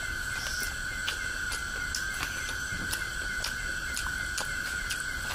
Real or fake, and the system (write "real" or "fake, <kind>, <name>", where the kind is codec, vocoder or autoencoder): real